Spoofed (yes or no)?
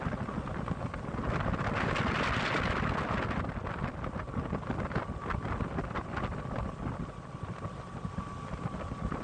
no